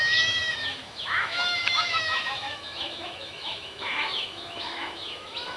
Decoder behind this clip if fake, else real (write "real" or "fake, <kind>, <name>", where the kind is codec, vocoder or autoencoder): fake, autoencoder, DAC-VAE